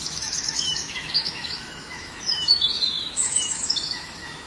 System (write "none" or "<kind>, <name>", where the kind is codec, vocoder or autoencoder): autoencoder, DAC-VAE